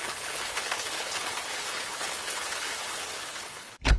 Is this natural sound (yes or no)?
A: no